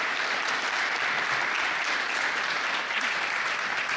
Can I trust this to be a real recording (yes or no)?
no